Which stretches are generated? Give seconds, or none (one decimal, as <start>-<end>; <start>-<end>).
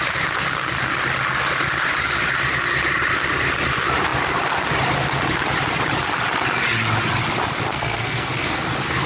7.7-8.6